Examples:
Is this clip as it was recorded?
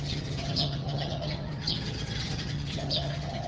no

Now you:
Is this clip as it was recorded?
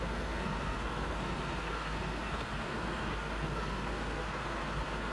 no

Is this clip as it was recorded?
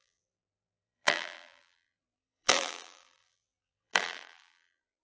no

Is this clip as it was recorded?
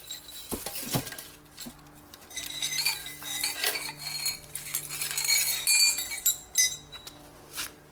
yes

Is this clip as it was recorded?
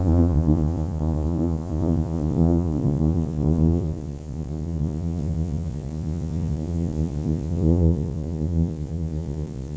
no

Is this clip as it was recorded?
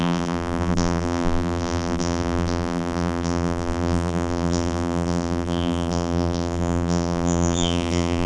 no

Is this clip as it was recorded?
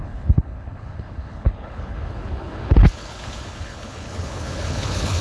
no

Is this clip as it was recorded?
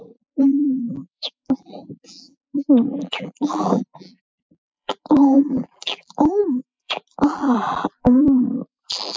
no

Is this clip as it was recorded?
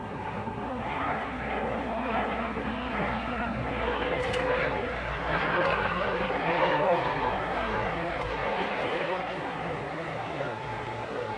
no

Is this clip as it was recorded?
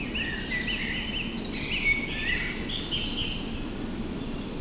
yes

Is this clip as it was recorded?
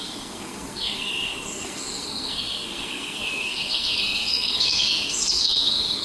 no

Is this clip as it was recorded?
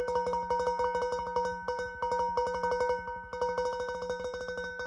yes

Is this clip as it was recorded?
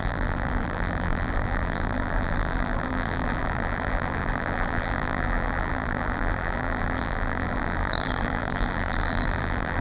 no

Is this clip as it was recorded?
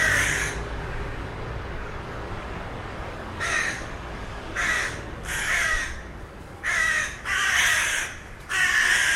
no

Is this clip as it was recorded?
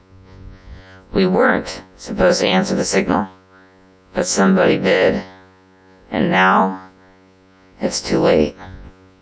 no